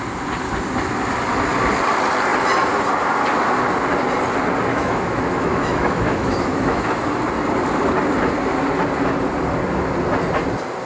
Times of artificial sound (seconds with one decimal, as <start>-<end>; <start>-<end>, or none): 4.7-6.9